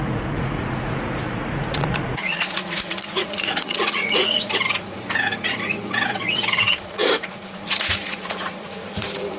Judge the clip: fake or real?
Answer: fake